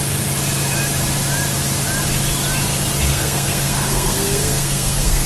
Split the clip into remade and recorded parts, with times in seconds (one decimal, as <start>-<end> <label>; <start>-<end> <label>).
0.0-3.1 recorded; 3.1-5.3 remade